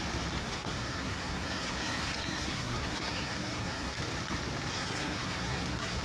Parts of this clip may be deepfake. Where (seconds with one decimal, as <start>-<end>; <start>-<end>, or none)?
0.4-4.0; 4.7-6.0